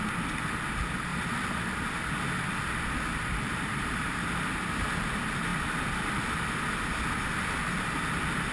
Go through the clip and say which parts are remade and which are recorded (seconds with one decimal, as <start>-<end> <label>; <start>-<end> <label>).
0.0-1.1 recorded; 1.1-2.0 remade; 2.0-3.1 recorded; 3.1-4.2 remade; 4.2-8.5 recorded